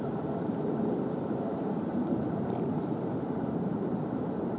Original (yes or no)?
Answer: no